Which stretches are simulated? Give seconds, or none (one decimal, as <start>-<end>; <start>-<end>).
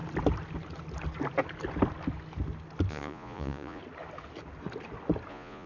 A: 2.9-3.8; 5.3-5.7